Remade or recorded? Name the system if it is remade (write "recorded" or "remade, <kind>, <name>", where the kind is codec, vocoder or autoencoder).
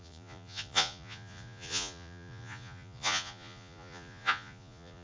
remade, vocoder, Vocos